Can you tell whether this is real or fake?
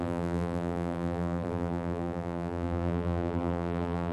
fake